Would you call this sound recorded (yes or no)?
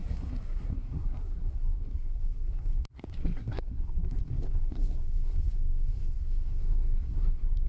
no